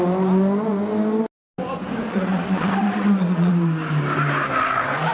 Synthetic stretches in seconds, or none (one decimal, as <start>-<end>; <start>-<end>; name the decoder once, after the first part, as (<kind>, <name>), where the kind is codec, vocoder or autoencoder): 2.1-3.5 (vocoder, Vocos)